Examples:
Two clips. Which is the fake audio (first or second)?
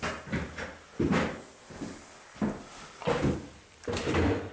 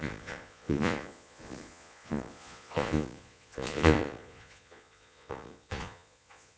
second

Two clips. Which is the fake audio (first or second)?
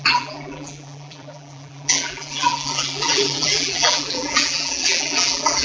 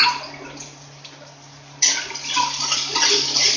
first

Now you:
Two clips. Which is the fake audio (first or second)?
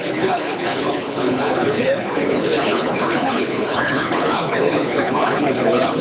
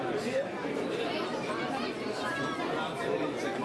first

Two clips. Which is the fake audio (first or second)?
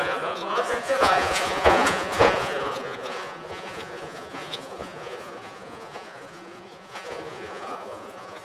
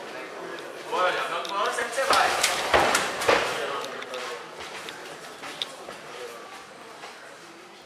first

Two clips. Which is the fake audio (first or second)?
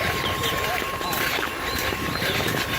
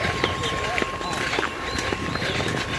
first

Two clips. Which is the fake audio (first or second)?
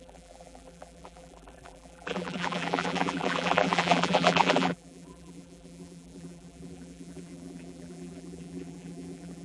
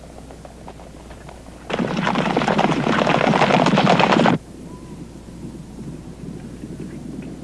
first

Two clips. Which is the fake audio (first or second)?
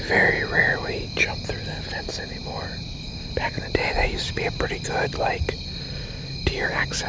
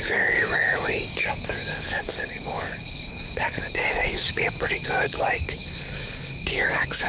second